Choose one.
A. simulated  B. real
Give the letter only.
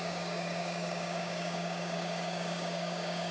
A